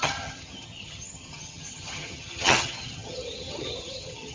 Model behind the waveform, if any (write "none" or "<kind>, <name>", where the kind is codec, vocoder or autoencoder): vocoder, HiFi-GAN